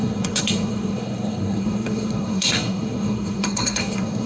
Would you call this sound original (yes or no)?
no